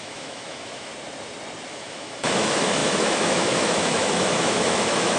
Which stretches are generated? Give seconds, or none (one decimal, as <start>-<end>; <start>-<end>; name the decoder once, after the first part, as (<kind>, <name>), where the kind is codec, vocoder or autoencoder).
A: 0.0-0.9 (autoencoder, DAC-VAE); 1.7-5.2

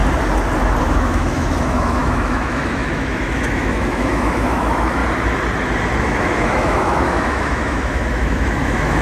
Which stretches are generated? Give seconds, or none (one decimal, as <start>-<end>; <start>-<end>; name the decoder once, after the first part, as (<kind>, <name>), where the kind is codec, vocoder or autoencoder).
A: 0.8-5.0 (autoencoder, DAC-VAE); 6.0-9.0

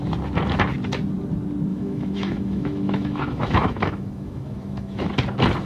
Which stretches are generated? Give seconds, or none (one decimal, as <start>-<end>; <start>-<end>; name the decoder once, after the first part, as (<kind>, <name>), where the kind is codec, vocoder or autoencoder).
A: 1.7-5.1 (autoencoder, DAC-VAE)

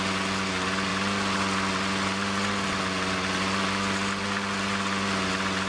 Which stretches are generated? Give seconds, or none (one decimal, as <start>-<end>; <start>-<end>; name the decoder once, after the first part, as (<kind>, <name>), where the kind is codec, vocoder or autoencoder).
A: none

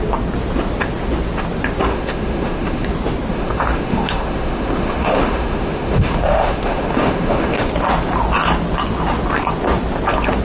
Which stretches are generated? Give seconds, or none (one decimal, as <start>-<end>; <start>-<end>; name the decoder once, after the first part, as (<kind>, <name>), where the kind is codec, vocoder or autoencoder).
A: 1.9-2.9 (autoencoder, DAC-VAE); 3.3-7.7

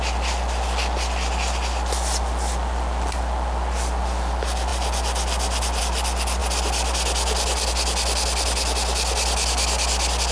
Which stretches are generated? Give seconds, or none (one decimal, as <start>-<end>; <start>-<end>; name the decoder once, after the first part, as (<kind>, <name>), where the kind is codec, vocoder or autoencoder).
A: none

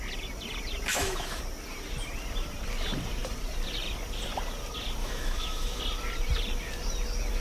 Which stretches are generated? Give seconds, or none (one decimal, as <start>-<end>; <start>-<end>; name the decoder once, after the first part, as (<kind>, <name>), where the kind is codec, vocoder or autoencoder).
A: 0.9-1.4 (autoencoder, DAC-VAE); 5.0-5.8